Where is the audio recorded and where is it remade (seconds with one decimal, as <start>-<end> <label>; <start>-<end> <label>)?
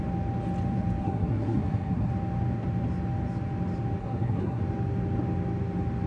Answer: 0.0-1.0 recorded; 1.0-2.1 remade; 2.1-4.0 recorded; 4.0-4.6 remade; 4.6-6.1 recorded